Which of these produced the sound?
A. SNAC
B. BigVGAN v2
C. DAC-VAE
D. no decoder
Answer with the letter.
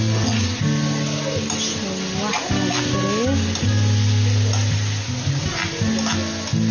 D